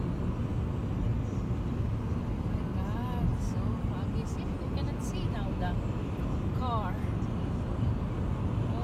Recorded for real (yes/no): yes